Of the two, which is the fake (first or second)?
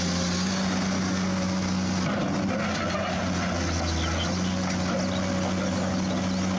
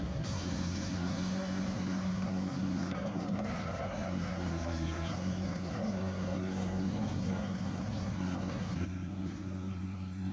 second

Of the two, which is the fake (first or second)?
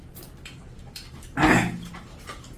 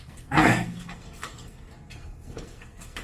second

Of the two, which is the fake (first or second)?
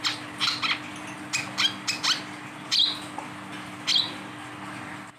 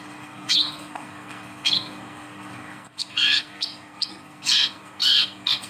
second